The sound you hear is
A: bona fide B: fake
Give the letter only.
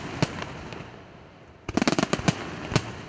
A